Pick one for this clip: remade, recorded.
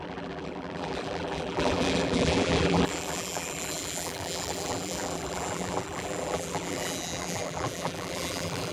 remade